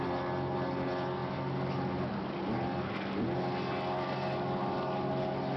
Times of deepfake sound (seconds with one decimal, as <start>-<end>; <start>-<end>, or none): none